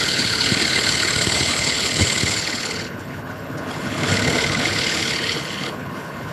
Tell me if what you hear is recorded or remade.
remade